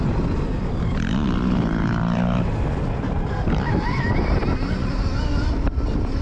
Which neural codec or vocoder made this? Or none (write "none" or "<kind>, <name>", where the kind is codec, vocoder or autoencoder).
none